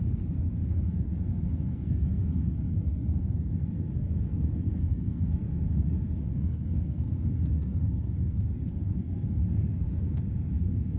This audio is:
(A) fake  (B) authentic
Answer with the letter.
A